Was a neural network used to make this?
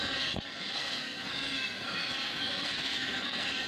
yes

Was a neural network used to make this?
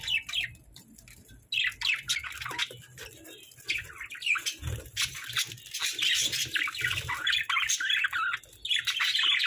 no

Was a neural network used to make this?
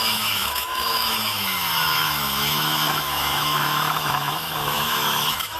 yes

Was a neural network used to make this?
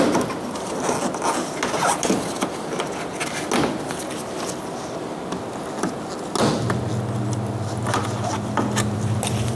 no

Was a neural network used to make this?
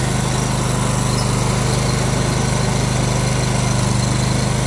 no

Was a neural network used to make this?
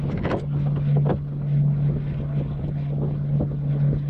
no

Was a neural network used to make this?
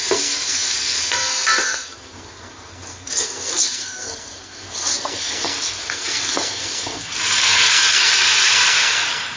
yes